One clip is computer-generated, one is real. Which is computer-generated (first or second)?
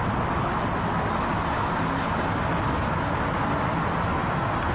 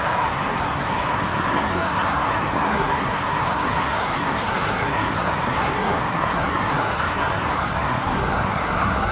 second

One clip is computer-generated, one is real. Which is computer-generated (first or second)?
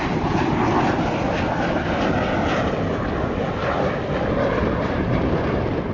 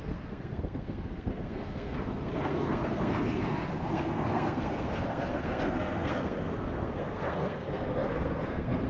second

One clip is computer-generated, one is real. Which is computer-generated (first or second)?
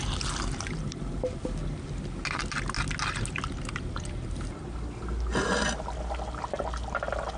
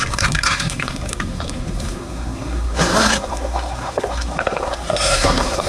second